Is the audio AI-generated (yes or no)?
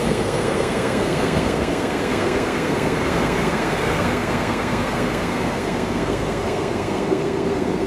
yes